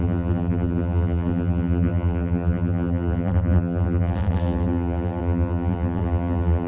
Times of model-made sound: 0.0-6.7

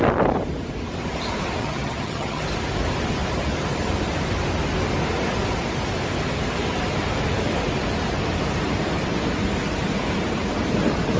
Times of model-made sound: 1.6-2.4

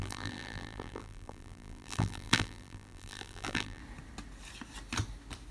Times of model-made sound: 0.0-3.8

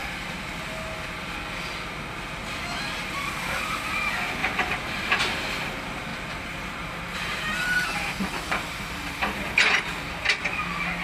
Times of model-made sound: 0.0-0.5; 4.4-5.2; 6.1-9.7

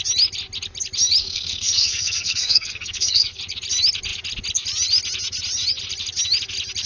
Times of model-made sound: 1.2-3.4